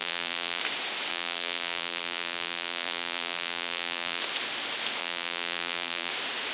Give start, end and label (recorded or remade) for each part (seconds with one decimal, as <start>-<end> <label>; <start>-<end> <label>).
0.0-0.6 remade; 0.6-1.1 recorded; 1.1-4.2 remade; 4.2-5.0 recorded; 5.0-6.1 remade; 6.1-6.5 recorded

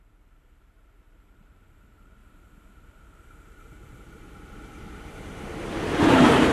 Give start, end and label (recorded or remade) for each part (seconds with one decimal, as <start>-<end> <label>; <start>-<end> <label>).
0.0-2.2 remade; 2.2-6.1 recorded; 6.1-6.5 remade

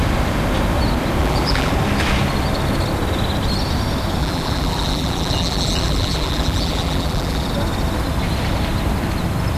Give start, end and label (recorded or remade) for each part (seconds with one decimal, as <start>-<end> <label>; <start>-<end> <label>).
0.0-1.2 recorded; 1.2-1.7 remade; 1.7-4.2 recorded; 4.2-7.5 remade; 7.5-9.6 recorded